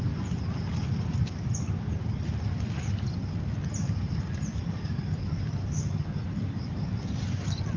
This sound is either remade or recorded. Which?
recorded